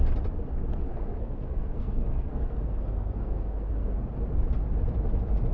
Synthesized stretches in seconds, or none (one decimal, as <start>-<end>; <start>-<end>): 0.7-4.0